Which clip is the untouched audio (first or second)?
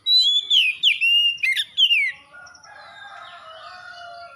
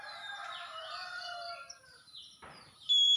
first